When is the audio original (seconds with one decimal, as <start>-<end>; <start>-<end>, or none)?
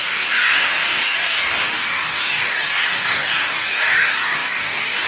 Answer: none